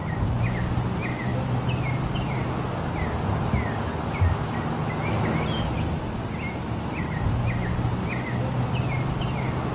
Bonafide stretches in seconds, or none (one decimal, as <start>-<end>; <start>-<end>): 0.0-9.7